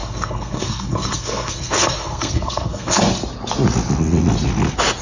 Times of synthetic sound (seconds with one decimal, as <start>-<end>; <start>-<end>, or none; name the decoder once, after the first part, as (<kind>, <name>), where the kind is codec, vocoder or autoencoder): 0.0-3.0 (codec, SNAC)